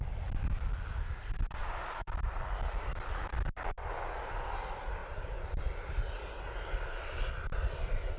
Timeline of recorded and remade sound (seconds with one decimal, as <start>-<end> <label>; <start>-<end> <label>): 0.0-1.6 recorded; 1.6-2.4 remade; 2.4-5.0 recorded; 5.0-5.6 remade; 5.6-8.2 recorded